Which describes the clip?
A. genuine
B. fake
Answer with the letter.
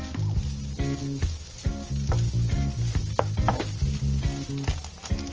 A